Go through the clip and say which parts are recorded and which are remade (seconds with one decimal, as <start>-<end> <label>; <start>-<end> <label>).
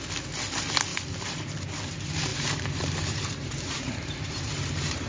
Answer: 0.0-0.9 recorded; 0.9-1.5 remade; 1.5-2.3 recorded; 2.3-5.1 remade